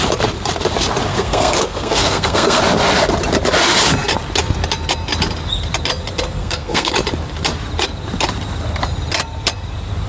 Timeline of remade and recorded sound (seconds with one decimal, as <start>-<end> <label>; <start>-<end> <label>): 0.0-1.1 recorded; 1.1-2.6 remade; 2.6-6.4 recorded; 6.4-6.9 remade; 6.9-10.1 recorded